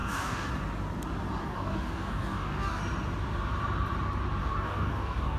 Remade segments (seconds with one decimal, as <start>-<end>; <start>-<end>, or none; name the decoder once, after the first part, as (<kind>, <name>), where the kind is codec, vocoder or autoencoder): 0.0-0.5 (codec, DAC); 1.4-2.8; 4.4-5.4